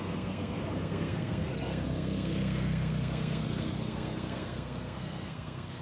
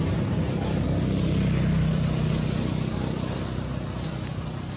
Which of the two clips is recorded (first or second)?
second